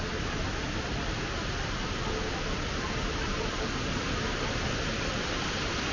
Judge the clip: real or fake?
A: real